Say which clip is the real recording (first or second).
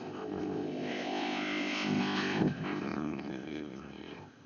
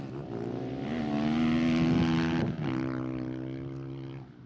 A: second